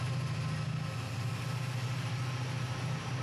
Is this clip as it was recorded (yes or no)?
yes